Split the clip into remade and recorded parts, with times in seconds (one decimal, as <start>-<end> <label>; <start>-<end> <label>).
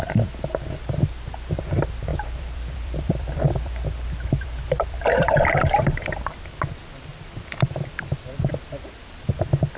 0.0-2.1 recorded; 2.1-6.3 remade; 6.3-7.1 recorded; 7.1-7.9 remade; 7.9-9.8 recorded